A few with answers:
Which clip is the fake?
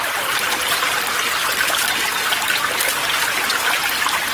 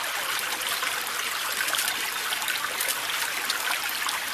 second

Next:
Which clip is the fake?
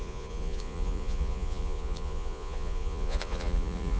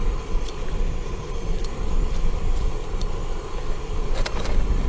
first